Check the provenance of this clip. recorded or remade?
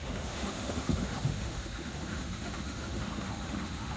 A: remade